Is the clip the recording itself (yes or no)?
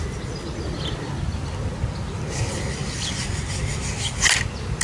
yes